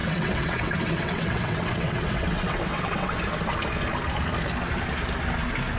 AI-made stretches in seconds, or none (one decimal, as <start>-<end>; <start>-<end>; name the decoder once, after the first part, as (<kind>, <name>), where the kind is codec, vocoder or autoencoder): 0.0-3.2 (vocoder, WaveNeXt)